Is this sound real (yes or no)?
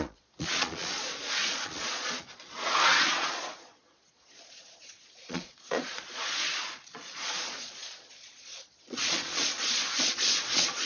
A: no